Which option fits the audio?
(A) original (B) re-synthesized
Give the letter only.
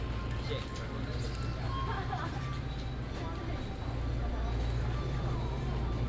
A